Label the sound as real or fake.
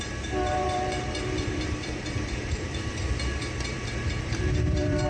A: fake